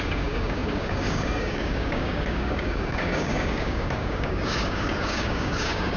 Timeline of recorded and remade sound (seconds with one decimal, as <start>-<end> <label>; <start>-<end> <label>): 0.0-6.0 remade